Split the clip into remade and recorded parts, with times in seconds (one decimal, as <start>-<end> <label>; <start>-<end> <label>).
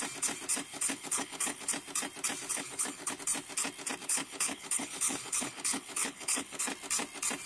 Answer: 0.0-0.7 recorded; 0.7-1.7 remade; 1.7-2.5 recorded; 2.5-3.1 remade; 3.1-4.0 recorded; 4.0-6.6 remade; 6.6-7.5 recorded